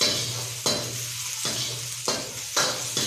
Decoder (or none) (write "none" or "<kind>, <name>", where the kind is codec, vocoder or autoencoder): none